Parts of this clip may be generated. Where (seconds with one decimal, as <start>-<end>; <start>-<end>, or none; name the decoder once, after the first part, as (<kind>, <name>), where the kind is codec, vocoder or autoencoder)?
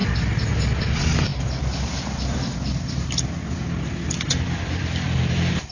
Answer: 0.8-5.7 (vocoder, BigVGAN v2)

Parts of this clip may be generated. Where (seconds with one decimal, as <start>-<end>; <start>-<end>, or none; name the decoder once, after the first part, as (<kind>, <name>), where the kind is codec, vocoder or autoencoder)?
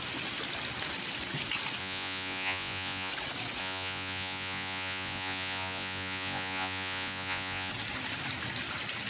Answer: 1.8-3.1 (vocoder, Vocos); 3.6-7.7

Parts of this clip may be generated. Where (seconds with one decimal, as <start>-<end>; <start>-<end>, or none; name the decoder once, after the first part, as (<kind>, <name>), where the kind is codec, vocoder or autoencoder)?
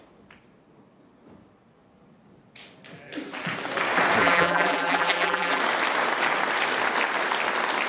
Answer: 4.2-5.6 (vocoder, BigVGAN v2)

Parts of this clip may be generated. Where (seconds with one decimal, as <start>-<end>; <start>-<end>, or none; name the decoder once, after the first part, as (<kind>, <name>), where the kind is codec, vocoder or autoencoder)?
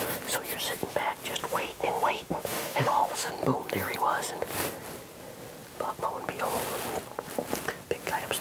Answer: 1.4-3.3 (autoencoder, DAC-VAE)